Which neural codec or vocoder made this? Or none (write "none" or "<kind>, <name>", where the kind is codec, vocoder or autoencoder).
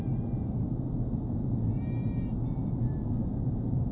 none